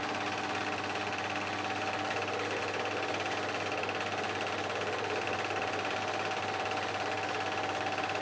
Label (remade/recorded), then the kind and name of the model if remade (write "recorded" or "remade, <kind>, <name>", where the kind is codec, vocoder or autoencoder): recorded